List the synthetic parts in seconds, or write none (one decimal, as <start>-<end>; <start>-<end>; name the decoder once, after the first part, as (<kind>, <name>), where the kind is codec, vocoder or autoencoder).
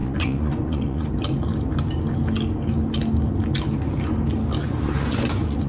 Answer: 0.0-1.1 (vocoder, Vocos); 4.6-5.7